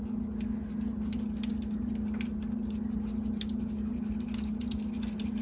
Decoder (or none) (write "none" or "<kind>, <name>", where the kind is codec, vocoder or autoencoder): none